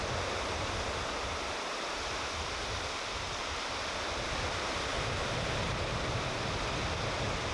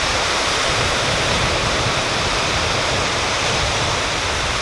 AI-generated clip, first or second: second